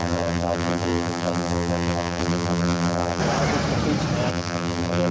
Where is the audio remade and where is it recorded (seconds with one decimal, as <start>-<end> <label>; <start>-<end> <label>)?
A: 0.0-3.2 remade; 3.2-4.3 recorded; 4.3-5.1 remade